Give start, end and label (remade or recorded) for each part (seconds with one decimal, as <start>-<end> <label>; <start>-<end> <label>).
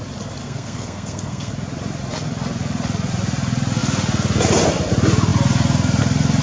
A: 0.0-0.4 recorded; 0.4-1.5 remade; 1.5-6.4 recorded